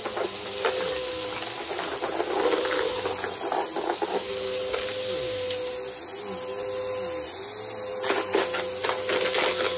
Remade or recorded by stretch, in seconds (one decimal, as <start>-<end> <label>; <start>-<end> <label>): 0.0-9.8 recorded